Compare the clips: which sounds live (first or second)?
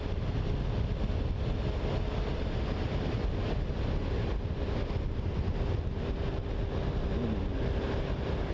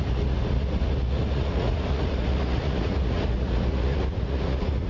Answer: first